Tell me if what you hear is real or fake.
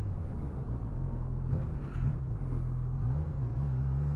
fake